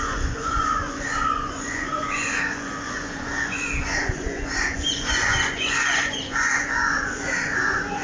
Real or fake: fake